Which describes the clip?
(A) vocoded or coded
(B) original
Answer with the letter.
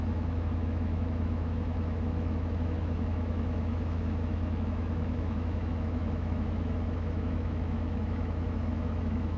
A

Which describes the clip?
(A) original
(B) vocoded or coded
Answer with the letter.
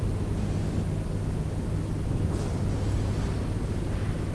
A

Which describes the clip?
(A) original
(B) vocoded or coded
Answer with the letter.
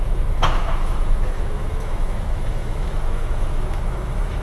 B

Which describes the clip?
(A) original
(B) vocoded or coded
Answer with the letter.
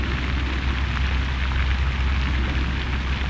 A